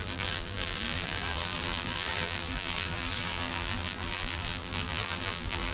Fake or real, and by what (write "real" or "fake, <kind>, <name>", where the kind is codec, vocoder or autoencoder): fake, vocoder, BigVGAN v2